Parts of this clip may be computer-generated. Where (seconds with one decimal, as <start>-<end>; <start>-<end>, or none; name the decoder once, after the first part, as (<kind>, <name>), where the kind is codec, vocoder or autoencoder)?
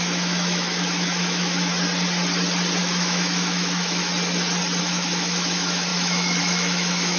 0.0-1.7 (autoencoder, DAC-VAE); 2.8-4.1; 4.8-7.2